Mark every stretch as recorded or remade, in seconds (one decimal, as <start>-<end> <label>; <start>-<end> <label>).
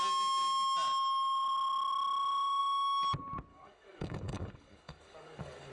0.0-3.5 recorded; 3.5-5.7 remade